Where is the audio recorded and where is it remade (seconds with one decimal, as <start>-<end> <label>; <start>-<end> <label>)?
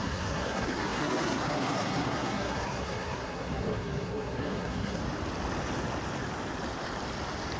0.0-5.0 remade; 5.0-7.6 recorded